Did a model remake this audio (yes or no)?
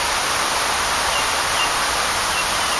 no